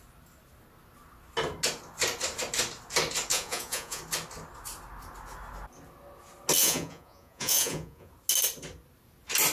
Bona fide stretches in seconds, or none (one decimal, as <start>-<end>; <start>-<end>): 0.0-3.3; 4.0-6.6; 8.1-9.5